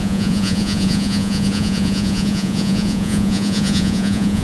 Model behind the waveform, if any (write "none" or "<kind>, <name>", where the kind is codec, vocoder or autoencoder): vocoder, Vocos